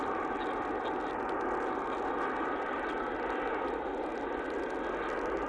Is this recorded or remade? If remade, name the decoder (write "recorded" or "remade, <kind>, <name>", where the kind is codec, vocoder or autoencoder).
recorded